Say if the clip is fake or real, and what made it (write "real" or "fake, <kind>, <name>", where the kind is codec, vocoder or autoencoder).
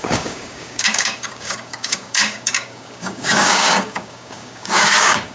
fake, codec, DAC